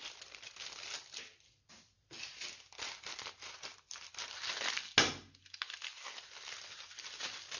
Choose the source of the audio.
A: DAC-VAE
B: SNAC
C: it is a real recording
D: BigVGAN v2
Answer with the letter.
C